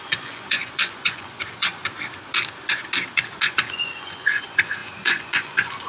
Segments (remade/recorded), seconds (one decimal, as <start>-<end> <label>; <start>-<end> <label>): 0.0-1.8 remade; 1.8-3.1 recorded; 3.1-5.9 remade